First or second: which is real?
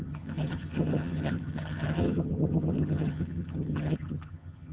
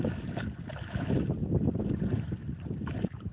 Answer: second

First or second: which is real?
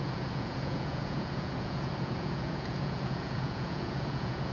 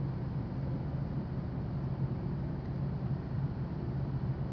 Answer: second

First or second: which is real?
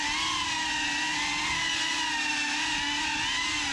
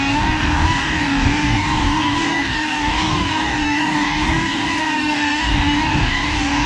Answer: first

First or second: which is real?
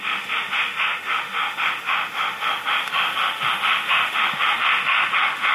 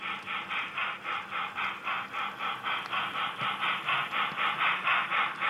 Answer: second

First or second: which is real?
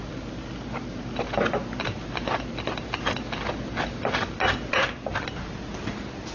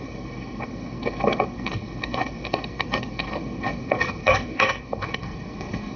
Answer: first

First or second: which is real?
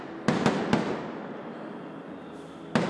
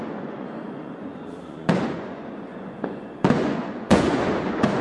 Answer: first